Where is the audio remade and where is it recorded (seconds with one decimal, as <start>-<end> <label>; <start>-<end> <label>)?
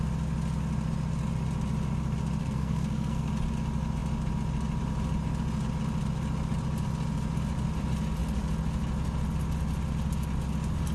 0.0-2.4 recorded; 2.4-3.3 remade; 3.3-10.9 recorded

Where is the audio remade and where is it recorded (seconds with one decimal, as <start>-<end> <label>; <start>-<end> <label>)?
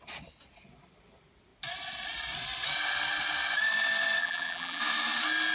0.0-4.2 recorded; 4.2-4.8 remade; 4.8-5.5 recorded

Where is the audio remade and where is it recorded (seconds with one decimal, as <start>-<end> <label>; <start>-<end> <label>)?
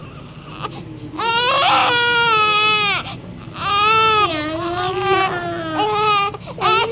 0.0-6.9 recorded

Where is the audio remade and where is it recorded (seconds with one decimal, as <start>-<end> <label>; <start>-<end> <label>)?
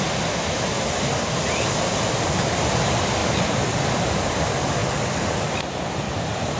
0.0-6.6 recorded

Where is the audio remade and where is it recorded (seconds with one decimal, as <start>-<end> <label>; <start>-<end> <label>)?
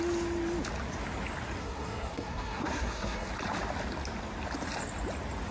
0.0-1.6 recorded; 1.6-3.3 remade; 3.3-5.5 recorded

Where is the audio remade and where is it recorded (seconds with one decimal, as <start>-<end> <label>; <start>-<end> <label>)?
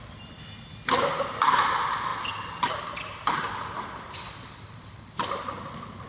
0.0-6.1 recorded